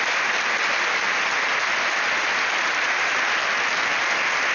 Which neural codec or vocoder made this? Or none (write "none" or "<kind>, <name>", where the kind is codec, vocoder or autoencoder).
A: none